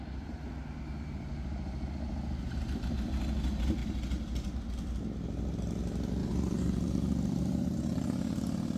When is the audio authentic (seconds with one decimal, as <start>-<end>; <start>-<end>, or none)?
0.0-6.2; 7.4-8.8